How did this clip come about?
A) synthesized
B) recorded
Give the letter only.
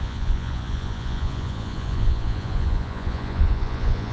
A